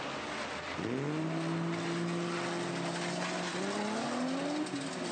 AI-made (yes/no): no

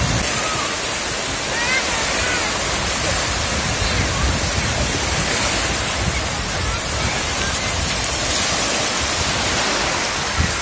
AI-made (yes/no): no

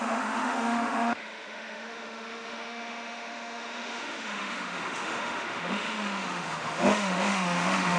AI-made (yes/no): yes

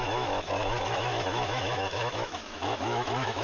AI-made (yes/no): yes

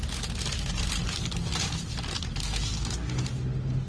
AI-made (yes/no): no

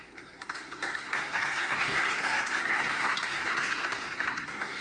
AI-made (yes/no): yes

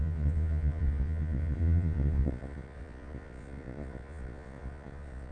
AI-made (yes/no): yes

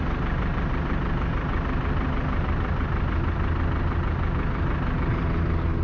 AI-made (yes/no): no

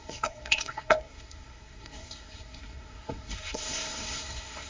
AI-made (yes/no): yes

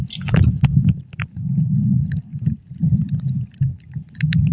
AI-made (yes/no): no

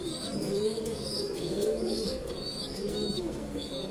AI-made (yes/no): yes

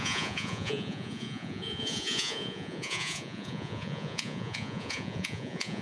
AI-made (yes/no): yes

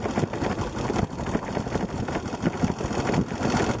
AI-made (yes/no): no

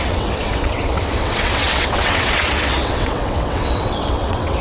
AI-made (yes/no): yes